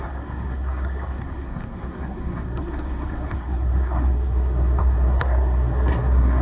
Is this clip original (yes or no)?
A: no